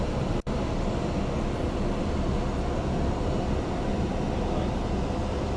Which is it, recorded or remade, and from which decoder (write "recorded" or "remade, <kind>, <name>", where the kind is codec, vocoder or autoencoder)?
recorded